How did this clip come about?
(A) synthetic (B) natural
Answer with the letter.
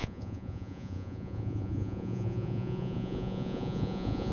A